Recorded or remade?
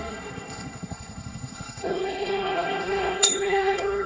remade